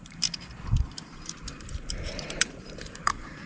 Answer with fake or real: fake